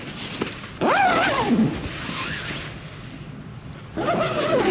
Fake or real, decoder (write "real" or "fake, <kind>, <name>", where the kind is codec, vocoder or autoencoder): real